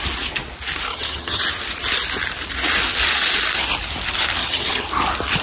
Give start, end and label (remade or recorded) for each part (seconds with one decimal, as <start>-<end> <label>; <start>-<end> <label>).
0.0-0.9 recorded; 0.9-1.4 remade; 1.4-4.4 recorded; 4.4-4.9 remade; 4.9-5.4 recorded